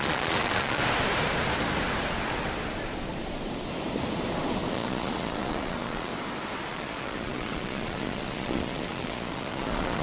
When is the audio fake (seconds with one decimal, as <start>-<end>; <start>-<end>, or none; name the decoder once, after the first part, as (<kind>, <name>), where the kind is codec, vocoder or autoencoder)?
0.0-0.8 (vocoder, Vocos); 4.7-6.1; 6.7-10.0